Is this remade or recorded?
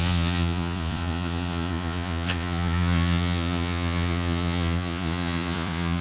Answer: remade